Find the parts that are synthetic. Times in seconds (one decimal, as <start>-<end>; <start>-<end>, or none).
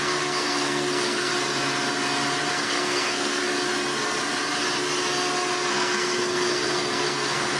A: 0.0-1.3; 2.5-3.4; 5.7-7.6